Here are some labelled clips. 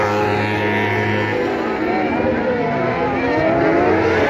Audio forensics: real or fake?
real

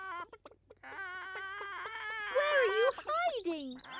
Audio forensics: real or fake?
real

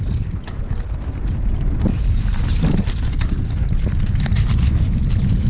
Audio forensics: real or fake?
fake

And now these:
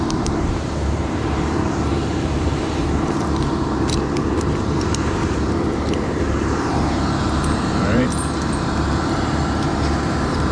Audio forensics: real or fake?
fake